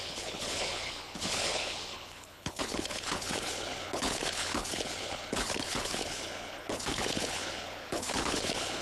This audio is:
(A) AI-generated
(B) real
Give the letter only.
A